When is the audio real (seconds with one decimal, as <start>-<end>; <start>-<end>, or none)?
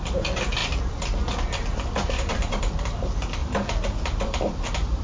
0.0-0.6; 2.6-3.4